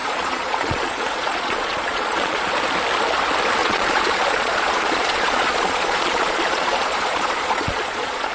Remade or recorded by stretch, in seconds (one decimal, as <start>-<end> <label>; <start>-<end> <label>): 0.0-2.4 remade; 2.4-3.6 recorded; 3.6-8.3 remade